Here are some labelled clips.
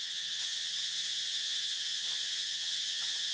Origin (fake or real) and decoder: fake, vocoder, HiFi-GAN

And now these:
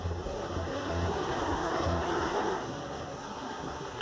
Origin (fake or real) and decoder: fake, codec, SNAC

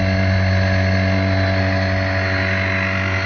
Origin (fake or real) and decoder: real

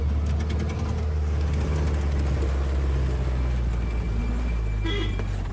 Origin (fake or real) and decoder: real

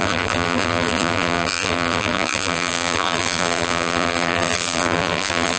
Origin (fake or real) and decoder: fake, vocoder, BigVGAN v2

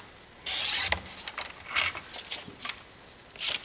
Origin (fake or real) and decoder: real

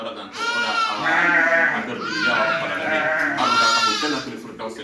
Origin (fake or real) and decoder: real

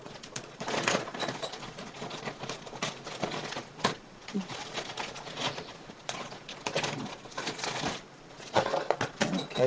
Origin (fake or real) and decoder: fake, vocoder, Vocos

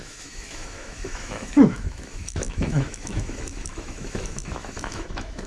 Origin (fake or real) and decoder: fake, autoencoder, DAC-VAE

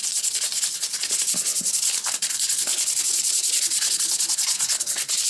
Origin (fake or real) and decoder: real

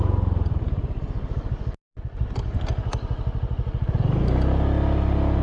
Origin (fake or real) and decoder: real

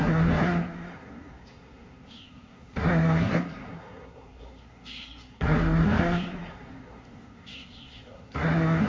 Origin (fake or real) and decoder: fake, codec, SNAC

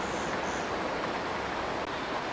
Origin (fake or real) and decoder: real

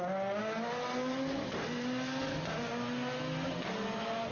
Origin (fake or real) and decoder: real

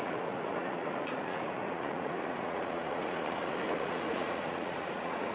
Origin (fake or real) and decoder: fake, vocoder, Vocos